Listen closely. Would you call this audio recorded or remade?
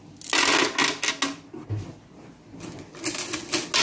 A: recorded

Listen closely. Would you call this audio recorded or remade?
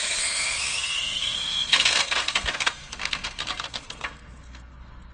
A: remade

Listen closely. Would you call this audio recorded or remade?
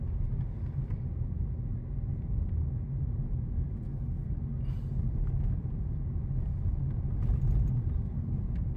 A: recorded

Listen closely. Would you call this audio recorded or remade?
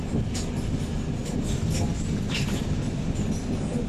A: recorded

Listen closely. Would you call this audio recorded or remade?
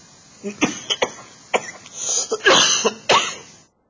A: recorded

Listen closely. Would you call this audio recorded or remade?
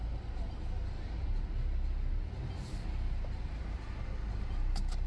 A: recorded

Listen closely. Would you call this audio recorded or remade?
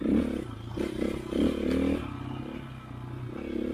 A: recorded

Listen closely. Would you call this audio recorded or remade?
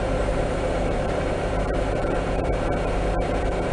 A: remade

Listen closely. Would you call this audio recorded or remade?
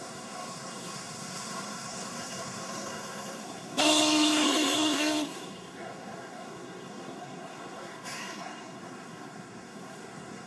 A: remade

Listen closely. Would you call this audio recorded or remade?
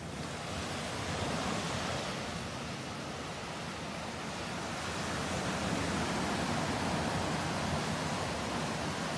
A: recorded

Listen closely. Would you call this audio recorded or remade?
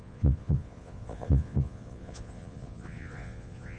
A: remade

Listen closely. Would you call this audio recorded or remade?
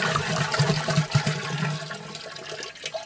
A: recorded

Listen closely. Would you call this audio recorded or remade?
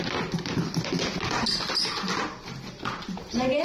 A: recorded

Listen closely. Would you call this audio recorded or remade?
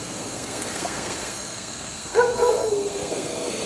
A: remade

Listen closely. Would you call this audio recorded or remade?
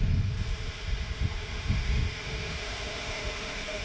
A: remade